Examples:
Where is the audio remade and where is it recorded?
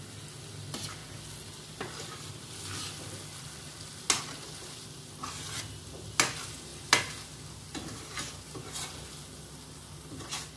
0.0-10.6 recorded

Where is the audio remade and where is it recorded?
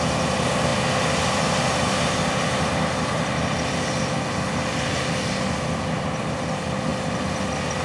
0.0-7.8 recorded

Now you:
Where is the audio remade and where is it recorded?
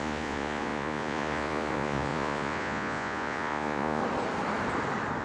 0.0-4.0 remade; 4.0-5.2 recorded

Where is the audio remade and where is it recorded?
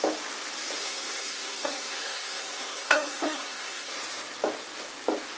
0.0-0.8 recorded; 0.8-3.9 remade; 3.9-5.4 recorded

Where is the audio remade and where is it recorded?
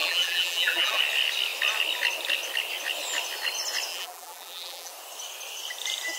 0.0-1.0 remade; 1.0-3.9 recorded; 3.9-4.9 remade; 4.9-6.2 recorded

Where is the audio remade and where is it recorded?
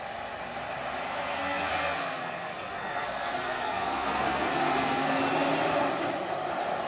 0.0-1.1 recorded; 1.1-5.2 remade; 5.2-6.9 recorded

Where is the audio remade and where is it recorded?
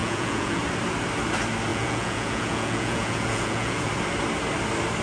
0.0-0.6 remade; 0.6-1.7 recorded; 1.7-3.9 remade; 3.9-5.0 recorded